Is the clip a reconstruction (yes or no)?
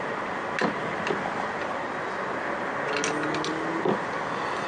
no